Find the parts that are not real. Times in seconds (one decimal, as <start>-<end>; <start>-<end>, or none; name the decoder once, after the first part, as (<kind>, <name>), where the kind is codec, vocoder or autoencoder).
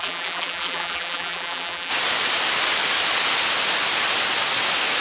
0.0-1.9 (vocoder, BigVGAN v2)